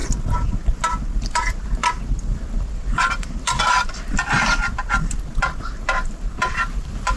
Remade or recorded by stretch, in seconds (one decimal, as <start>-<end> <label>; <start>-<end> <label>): 0.0-1.2 recorded; 1.2-7.2 remade